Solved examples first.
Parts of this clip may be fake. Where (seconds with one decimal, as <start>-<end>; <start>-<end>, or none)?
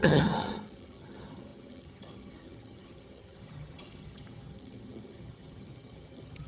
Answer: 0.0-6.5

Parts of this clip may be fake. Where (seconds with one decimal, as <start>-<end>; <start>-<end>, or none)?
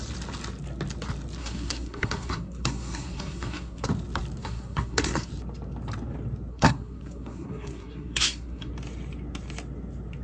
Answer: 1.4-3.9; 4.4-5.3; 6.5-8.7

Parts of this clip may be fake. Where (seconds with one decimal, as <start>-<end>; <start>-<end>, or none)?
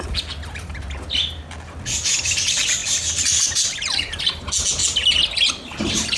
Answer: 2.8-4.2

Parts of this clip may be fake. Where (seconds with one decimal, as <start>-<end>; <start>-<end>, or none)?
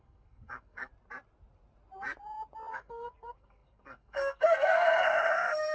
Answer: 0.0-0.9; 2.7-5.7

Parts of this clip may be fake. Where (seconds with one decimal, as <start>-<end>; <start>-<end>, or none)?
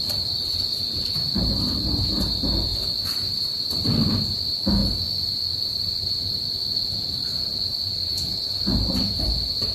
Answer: 0.0-2.7; 3.3-4.8; 8.1-9.7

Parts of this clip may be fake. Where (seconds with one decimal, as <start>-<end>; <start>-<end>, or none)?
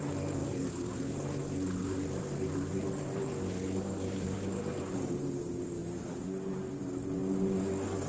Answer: none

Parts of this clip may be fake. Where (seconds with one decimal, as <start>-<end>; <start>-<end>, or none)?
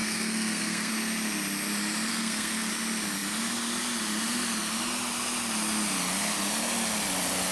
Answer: 0.0-0.9; 2.1-2.7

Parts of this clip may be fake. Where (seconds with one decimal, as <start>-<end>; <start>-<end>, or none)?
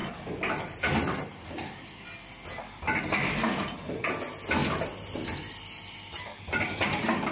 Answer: none